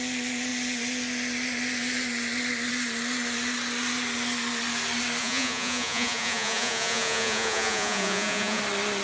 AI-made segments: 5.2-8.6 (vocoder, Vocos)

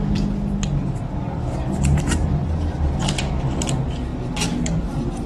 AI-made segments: 2.2-3.0 (vocoder, BigVGAN v2)

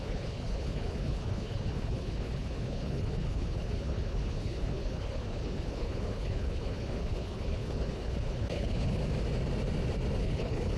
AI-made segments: 0.0-9.0 (codec, HILCodec); 10.2-10.8

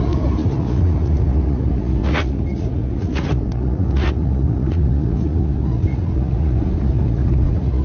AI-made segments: 0.0-7.8 (vocoder, Vocos)

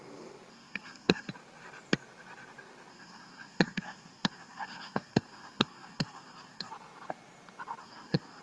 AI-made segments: 0.5-1.3 (codec, SNAC); 2.9-6.7; 7.8-8.4